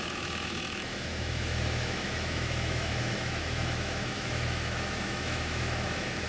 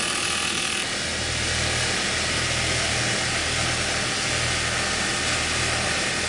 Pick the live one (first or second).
second